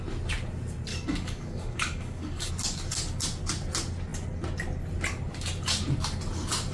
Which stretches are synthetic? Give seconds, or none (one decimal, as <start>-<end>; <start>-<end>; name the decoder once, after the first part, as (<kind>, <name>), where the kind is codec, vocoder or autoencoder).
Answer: 0.9-2.5 (codec, DAC)